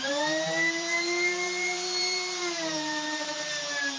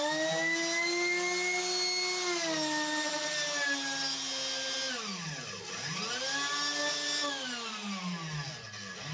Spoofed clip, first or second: first